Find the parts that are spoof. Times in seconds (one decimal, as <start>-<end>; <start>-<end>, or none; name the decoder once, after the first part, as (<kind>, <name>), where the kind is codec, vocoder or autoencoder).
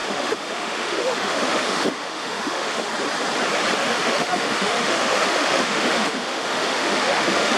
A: 0.0-2.9 (autoencoder, DAC-VAE); 3.8-7.6